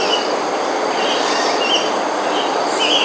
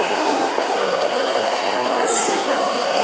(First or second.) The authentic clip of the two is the first